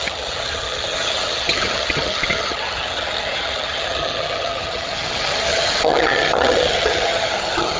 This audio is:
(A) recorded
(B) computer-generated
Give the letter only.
B